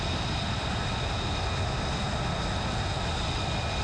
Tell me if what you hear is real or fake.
real